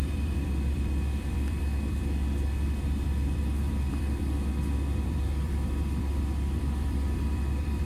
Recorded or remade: remade